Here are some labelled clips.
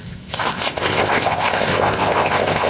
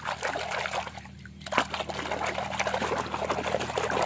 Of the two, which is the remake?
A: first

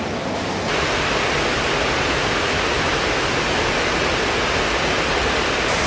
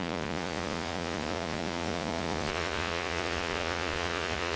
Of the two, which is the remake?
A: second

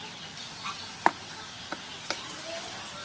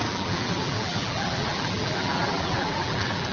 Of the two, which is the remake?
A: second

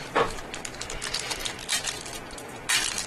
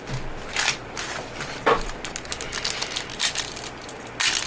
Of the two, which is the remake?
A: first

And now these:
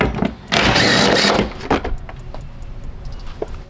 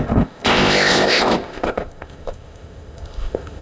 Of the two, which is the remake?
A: second